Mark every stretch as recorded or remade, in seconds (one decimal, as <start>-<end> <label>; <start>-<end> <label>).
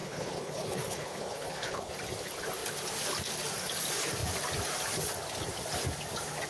0.0-1.9 remade; 1.9-6.5 recorded